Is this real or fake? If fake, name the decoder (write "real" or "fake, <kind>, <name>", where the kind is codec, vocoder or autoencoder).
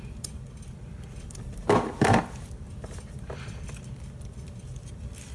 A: fake, vocoder, BigVGAN v2